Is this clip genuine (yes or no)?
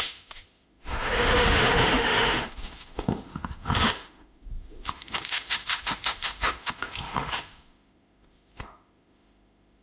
no